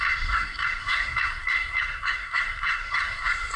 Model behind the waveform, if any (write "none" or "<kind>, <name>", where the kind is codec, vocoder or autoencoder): codec, SNAC